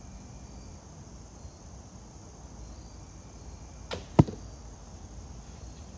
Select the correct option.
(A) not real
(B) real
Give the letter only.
B